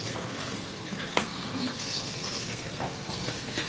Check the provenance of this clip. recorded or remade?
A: remade